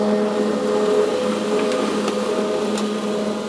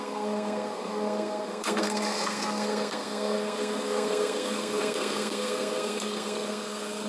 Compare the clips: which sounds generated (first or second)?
second